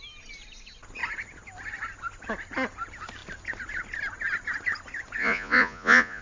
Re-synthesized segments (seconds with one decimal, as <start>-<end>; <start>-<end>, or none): 5.2-6.2